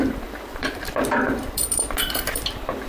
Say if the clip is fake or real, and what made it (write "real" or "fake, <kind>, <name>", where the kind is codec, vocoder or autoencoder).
fake, vocoder, BigVGAN v2